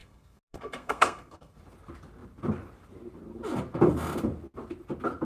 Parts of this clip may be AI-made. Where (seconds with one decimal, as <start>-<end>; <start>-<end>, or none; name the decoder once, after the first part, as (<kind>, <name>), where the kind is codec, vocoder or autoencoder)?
0.0-1.6 (codec, SNAC)